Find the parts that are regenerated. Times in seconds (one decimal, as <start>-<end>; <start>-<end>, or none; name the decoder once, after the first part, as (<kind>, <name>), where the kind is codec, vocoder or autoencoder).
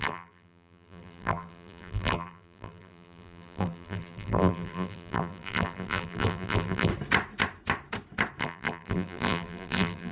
0.0-6.9 (vocoder, BigVGAN v2); 8.4-10.1